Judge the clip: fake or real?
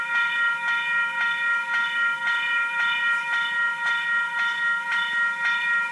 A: fake